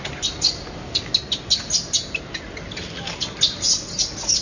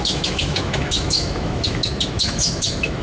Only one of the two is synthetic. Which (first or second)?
second